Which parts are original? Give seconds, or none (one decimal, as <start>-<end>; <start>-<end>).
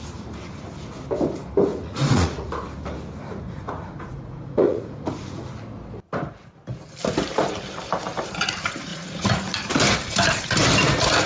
0.0-1.7; 2.5-3.3; 5.4-8.9; 9.8-11.3